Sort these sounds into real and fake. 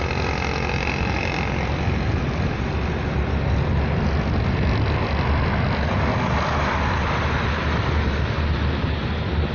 real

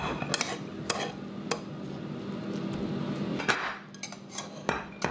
real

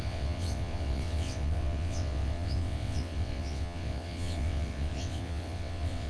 fake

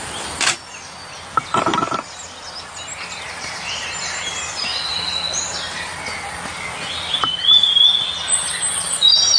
real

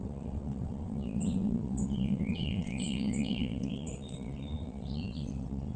fake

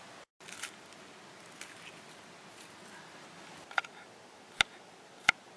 real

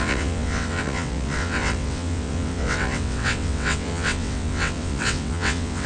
fake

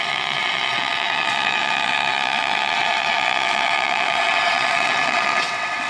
fake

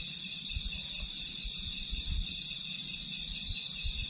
real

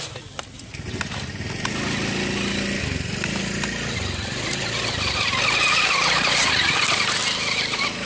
real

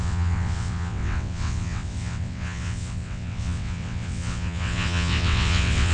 fake